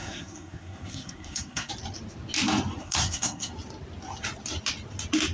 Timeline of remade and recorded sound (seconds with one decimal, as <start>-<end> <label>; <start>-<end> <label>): 0.0-1.7 remade; 1.7-2.8 recorded; 2.8-3.5 remade; 3.5-5.3 recorded